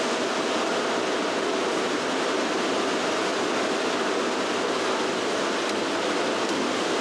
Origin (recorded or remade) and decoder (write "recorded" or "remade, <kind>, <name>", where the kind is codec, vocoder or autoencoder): recorded